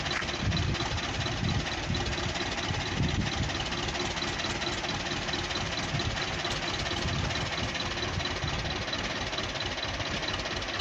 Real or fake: real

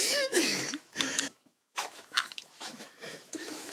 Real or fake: fake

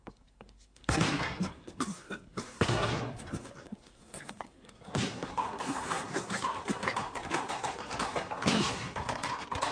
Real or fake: fake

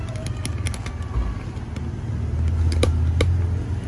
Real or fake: real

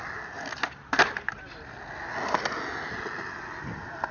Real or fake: real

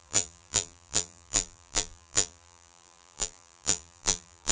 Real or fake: fake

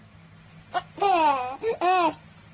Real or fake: real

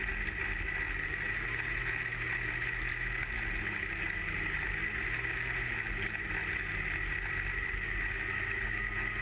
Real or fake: real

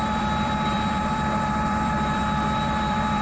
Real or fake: fake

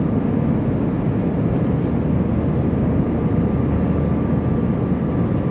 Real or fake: real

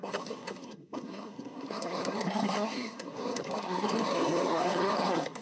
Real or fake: fake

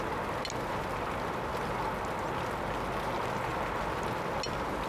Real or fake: real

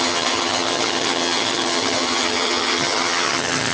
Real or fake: fake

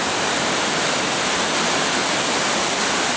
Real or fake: real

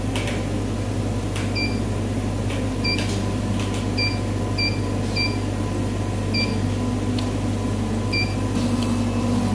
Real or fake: real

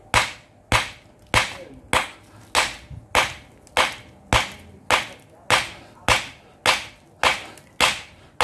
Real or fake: real